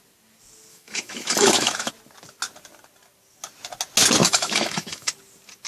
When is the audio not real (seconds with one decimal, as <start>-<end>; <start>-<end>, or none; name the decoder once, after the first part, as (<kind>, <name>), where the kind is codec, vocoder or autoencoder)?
0.7-1.9 (autoencoder, DAC-VAE); 4.2-5.1